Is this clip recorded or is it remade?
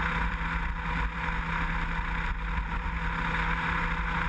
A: recorded